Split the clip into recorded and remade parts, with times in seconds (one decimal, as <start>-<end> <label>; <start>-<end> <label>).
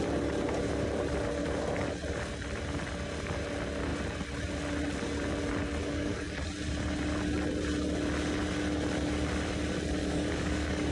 0.0-5.8 recorded; 5.8-6.4 remade; 6.4-10.0 recorded; 10.0-10.9 remade